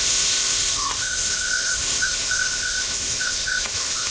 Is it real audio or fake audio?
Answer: fake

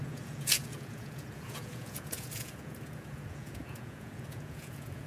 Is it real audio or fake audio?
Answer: fake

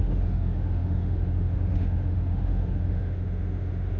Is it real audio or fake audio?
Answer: fake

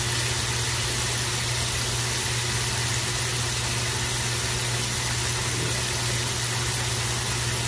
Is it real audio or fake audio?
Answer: real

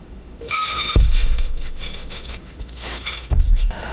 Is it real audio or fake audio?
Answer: fake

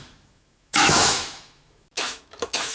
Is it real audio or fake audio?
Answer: fake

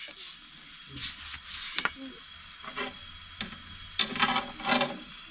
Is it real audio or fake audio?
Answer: real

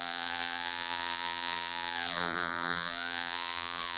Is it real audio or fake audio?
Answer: fake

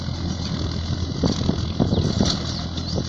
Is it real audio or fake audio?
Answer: real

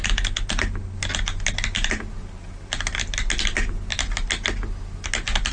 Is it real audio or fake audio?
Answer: real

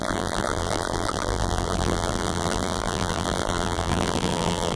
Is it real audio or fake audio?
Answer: fake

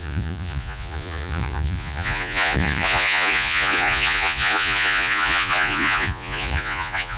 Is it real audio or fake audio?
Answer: fake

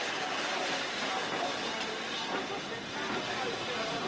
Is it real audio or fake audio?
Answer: real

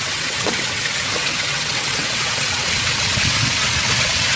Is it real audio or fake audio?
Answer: fake